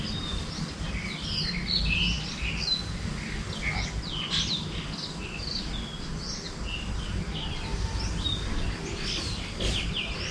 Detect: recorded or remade recorded